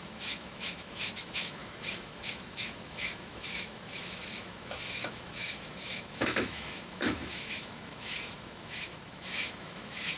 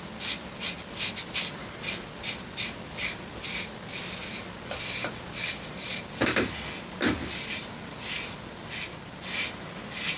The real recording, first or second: second